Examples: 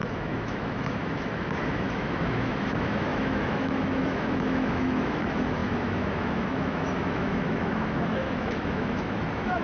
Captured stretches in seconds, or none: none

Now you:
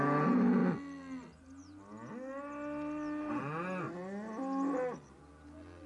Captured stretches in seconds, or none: 0.0-5.9